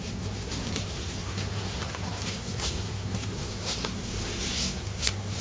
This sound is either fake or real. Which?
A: fake